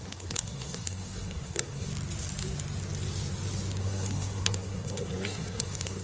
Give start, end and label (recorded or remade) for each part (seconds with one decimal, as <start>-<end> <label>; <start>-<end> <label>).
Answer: 0.0-1.9 remade; 1.9-3.8 recorded; 3.8-6.0 remade